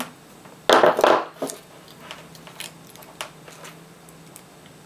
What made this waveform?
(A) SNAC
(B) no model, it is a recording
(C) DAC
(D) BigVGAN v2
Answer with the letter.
B